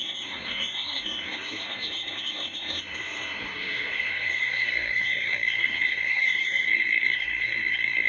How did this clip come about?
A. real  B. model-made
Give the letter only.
B